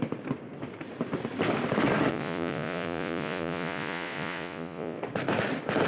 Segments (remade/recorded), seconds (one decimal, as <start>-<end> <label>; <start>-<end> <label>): 0.0-2.1 recorded; 2.1-5.0 remade; 5.0-5.9 recorded